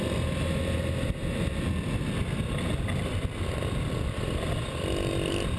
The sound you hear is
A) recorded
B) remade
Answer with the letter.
A